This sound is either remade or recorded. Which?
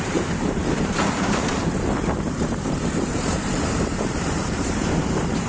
remade